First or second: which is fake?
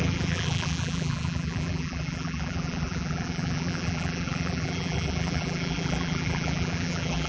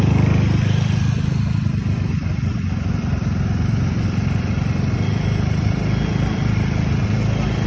first